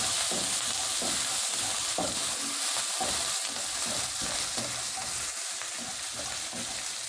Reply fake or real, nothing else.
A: real